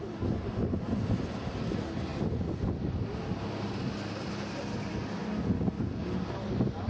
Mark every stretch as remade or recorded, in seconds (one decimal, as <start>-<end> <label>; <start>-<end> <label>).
0.0-6.9 recorded